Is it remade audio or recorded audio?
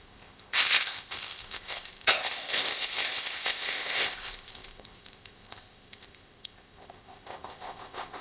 remade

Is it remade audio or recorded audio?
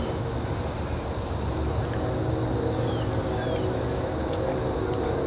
recorded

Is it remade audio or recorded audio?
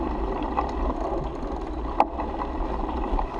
recorded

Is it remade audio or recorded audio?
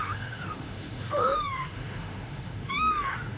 remade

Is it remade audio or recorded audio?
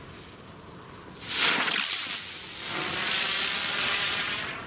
recorded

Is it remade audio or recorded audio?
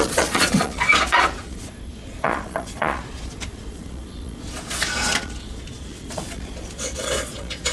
remade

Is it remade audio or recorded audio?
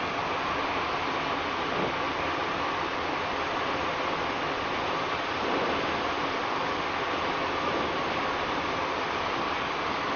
recorded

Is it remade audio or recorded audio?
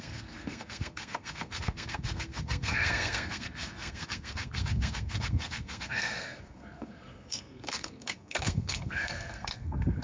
remade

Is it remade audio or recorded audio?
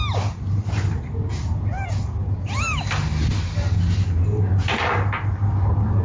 recorded